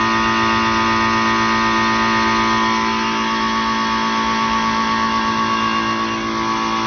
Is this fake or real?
real